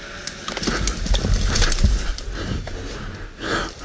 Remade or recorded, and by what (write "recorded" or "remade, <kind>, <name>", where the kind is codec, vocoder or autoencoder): recorded